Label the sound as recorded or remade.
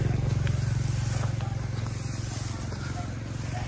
recorded